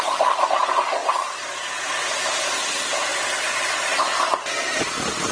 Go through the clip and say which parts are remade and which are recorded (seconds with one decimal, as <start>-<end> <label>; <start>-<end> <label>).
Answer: 0.0-3.1 recorded; 3.1-3.9 remade; 3.9-5.3 recorded